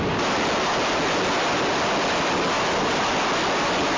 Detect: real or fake real